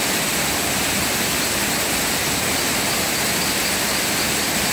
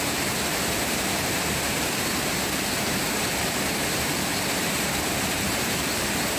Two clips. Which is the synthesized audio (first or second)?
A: second